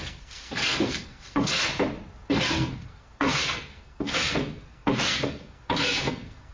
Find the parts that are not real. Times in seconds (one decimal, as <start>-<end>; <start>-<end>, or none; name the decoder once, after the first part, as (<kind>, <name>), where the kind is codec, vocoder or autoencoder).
0.0-1.6 (codec, SNAC); 2.3-6.5